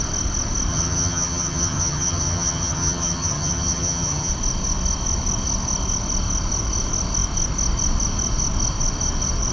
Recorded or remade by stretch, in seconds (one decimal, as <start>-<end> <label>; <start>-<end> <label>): 0.0-0.7 recorded; 0.7-4.3 remade; 4.3-9.5 recorded